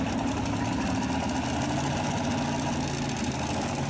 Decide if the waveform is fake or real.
real